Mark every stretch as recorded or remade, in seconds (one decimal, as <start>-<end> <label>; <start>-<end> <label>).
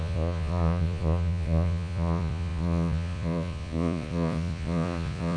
0.0-5.4 remade